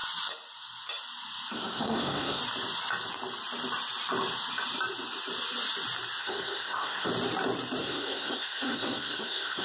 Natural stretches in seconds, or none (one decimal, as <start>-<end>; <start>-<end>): 0.0-1.5; 2.4-6.2; 7.1-7.8